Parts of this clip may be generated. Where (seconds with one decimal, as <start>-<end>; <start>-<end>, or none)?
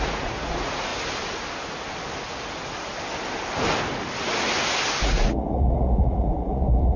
0.0-0.9; 5.0-7.0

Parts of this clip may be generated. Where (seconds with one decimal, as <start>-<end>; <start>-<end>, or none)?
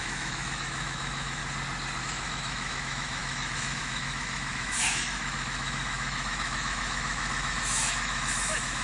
0.0-1.4; 2.0-8.8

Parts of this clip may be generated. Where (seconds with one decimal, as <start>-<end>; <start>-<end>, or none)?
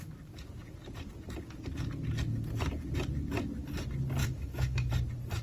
4.2-4.9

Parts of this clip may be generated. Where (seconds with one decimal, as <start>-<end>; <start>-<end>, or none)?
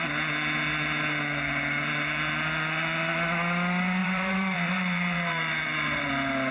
4.0-6.1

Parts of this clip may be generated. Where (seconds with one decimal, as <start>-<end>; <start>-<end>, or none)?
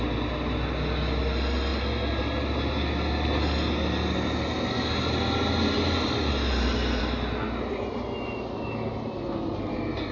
none